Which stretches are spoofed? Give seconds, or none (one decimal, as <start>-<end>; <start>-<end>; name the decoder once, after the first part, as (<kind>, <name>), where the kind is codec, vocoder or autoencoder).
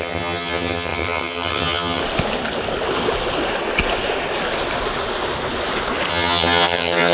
0.0-2.0 (vocoder, HiFi-GAN); 6.1-7.1